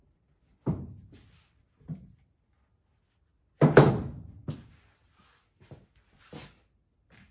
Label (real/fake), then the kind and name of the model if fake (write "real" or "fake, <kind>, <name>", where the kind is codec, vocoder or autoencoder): real